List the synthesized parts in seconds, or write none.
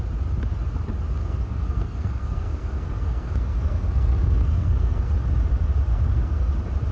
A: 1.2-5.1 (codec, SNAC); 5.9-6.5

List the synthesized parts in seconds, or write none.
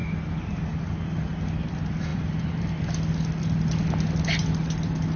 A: 2.1-2.7 (vocoder, BigVGAN v2)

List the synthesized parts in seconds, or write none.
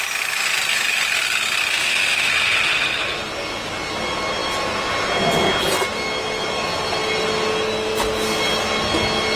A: 1.7-2.3 (autoencoder, DAC-VAE)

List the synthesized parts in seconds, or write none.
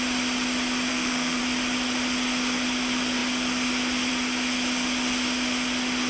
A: 0.9-1.4 (codec, SNAC)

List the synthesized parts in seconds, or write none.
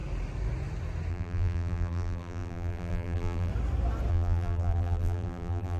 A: 1.1-3.5 (vocoder, BigVGAN v2); 4.1-5.8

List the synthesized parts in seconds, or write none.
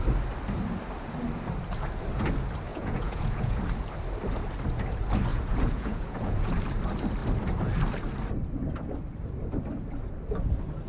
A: 2.7-3.6 (vocoder, Vocos); 5.3-6.6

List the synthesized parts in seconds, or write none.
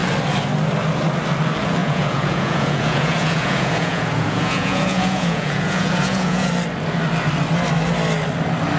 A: 1.8-6.5 (vocoder, Vocos)